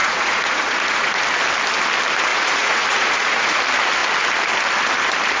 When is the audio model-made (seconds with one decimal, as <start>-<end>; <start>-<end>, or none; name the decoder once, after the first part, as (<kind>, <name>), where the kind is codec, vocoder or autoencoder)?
0.0-1.2 (vocoder, Vocos); 2.3-3.6